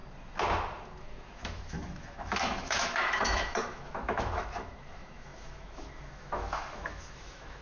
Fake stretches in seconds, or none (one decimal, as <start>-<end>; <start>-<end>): 1.0-7.6